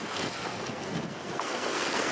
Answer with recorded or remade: remade